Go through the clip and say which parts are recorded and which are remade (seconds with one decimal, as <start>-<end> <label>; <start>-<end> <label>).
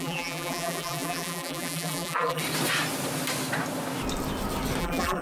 0.0-2.4 remade; 2.4-4.8 recorded; 4.8-5.2 remade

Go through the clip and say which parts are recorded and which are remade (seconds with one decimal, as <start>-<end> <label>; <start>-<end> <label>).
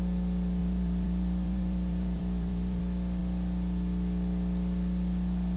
0.0-0.6 recorded; 0.6-2.8 remade; 2.8-5.6 recorded